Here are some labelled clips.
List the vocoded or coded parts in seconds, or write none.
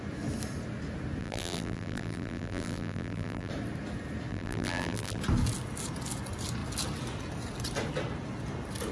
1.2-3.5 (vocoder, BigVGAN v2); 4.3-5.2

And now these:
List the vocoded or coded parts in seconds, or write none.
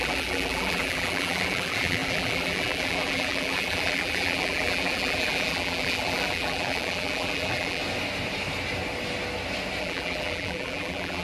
0.0-7.8 (vocoder, BigVGAN v2); 9.8-11.2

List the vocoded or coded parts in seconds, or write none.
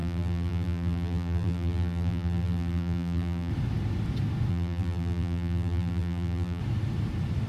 0.0-3.5 (vocoder, BigVGAN v2); 4.5-6.6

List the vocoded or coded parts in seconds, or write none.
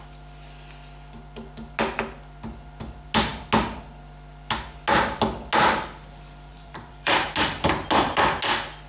6.5-7.3 (vocoder, BigVGAN v2)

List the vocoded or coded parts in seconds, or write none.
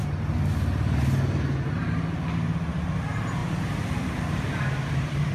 3.4-4.6 (vocoder, BigVGAN v2)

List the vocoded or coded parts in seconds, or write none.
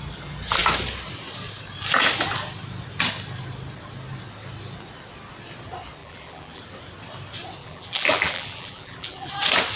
6.0-6.6 (vocoder, BigVGAN v2); 7.6-9.3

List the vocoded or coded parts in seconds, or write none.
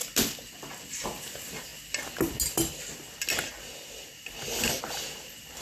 0.9-1.7 (vocoder, BigVGAN v2); 4.8-5.6